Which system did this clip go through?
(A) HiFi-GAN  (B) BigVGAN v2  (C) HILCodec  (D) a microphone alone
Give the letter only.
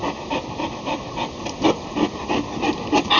D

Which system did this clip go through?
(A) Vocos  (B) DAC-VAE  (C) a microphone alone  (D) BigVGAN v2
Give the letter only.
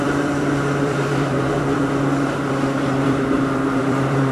D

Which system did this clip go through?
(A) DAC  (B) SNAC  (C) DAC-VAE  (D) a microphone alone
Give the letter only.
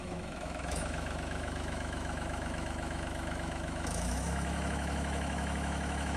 C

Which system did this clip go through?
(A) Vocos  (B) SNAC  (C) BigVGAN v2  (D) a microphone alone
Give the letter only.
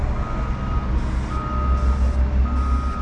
D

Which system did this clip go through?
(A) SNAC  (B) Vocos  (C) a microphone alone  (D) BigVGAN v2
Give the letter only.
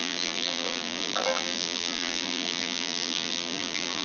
D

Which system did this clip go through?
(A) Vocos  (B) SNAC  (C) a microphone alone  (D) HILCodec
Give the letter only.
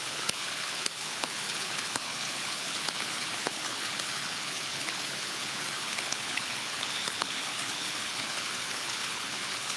D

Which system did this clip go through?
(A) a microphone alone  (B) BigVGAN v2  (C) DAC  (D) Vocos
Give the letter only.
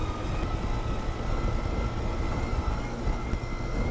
A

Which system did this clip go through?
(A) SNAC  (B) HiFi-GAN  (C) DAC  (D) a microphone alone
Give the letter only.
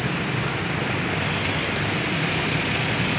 D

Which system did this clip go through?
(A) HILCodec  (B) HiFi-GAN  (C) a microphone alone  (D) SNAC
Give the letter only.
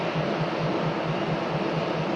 C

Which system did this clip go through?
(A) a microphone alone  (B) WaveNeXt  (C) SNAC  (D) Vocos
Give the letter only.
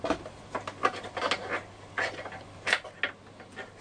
A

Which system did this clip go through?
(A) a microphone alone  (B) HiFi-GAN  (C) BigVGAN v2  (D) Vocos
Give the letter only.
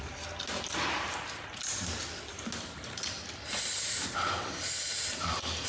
A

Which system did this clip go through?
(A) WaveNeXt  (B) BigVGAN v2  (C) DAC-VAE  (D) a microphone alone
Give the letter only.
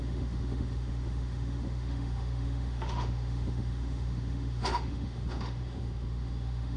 C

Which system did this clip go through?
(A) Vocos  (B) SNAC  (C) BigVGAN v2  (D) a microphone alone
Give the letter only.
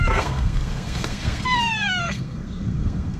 B